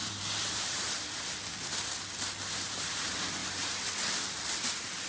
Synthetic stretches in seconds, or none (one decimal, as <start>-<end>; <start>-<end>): 0.0-0.9; 3.4-3.9